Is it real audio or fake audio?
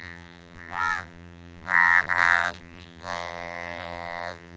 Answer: fake